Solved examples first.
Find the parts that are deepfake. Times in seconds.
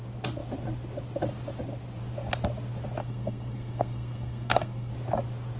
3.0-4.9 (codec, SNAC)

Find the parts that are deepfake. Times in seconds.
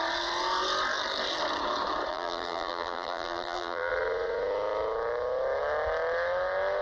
2.1-3.9 (vocoder, BigVGAN v2)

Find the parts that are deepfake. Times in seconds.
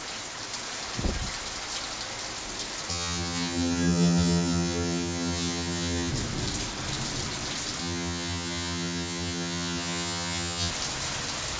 2.9-6.1 (vocoder, HiFi-GAN); 7.8-10.7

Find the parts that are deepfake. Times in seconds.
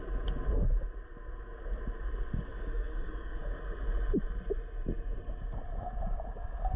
2.5-3.6 (codec, DAC)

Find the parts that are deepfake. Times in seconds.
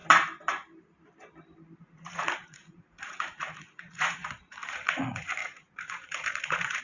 1.8-6.8 (vocoder, Vocos)